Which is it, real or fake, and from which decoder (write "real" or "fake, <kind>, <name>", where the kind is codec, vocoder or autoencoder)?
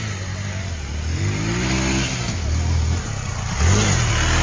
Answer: real